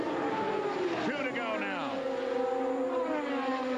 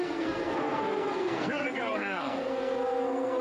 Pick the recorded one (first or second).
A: first